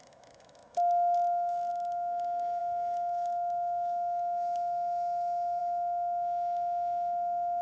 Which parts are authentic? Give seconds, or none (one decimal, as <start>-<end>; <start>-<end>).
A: none